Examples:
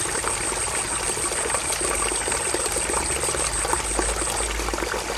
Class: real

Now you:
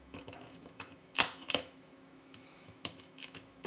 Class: fake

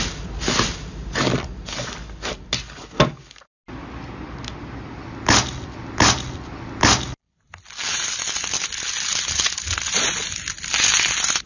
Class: real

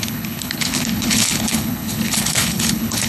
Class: fake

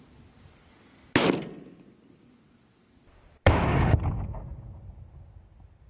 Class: real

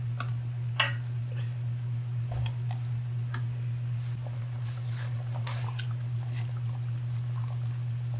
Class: real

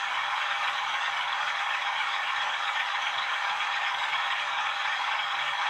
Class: fake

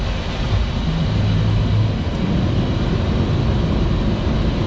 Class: real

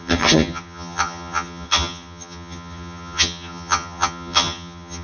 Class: fake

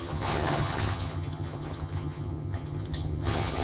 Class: fake